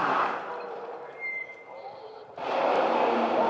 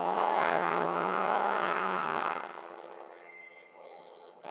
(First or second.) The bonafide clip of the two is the first